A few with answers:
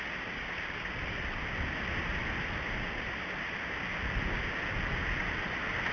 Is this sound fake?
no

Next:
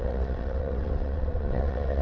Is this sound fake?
yes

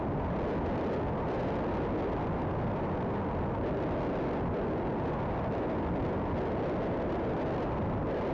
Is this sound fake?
no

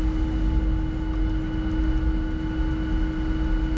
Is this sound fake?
no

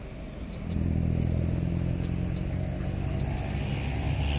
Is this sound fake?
no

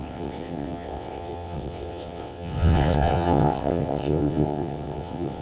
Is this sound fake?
yes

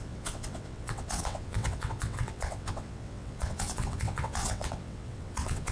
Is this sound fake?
yes